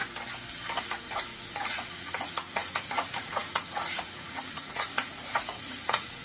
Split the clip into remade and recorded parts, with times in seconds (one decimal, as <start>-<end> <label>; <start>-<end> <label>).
0.0-0.8 recorded; 0.8-6.2 remade